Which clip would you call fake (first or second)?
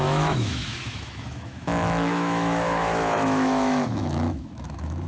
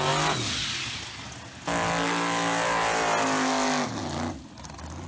first